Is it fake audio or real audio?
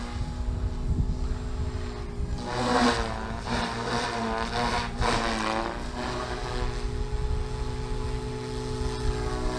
real